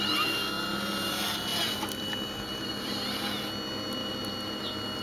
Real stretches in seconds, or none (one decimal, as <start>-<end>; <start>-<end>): 0.0-1.5; 3.3-4.0; 4.6-5.0